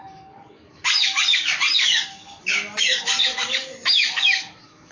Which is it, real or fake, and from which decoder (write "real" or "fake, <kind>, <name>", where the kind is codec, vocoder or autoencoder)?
fake, codec, DAC